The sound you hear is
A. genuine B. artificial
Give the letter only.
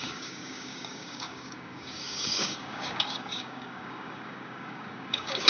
B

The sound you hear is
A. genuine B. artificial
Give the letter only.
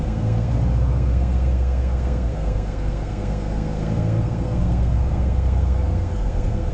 B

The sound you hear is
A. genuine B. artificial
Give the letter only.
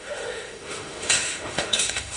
B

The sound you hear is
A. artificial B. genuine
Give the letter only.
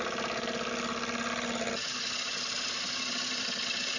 B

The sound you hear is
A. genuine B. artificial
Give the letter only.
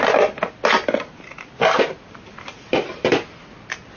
A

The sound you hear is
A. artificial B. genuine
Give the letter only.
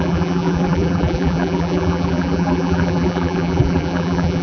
A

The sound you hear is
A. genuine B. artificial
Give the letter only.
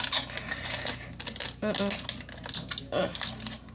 A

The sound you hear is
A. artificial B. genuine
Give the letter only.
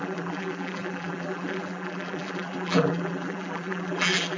A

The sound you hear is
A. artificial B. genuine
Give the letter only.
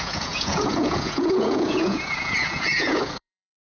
A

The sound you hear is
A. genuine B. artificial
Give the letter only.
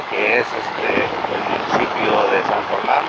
B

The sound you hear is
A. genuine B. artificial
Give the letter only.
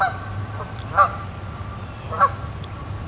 A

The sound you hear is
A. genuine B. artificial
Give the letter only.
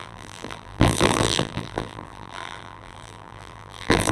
B